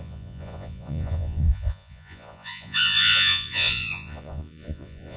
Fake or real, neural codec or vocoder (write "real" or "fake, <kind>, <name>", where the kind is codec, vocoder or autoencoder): fake, vocoder, Vocos